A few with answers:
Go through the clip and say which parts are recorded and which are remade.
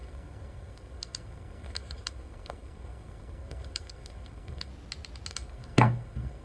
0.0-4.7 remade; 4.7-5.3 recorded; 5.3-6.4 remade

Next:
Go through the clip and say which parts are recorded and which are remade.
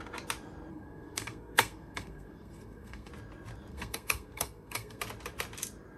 0.0-0.7 recorded; 0.7-3.1 remade; 3.1-3.7 recorded; 3.7-5.0 remade; 5.0-6.0 recorded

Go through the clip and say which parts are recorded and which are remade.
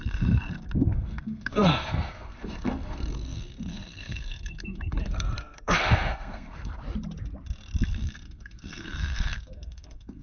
0.0-6.8 remade; 6.8-7.9 recorded; 7.9-10.2 remade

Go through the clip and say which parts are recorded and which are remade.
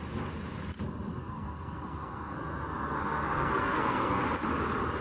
0.0-1.2 recorded; 1.2-4.2 remade; 4.2-5.0 recorded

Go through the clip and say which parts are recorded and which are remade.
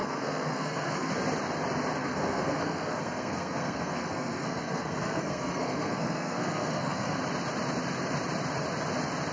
0.0-1.1 remade; 1.1-2.0 recorded; 2.0-7.2 remade; 7.2-9.3 recorded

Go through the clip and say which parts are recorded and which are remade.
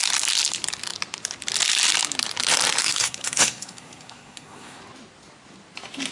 0.0-2.8 recorded; 2.8-4.8 remade; 4.8-6.1 recorded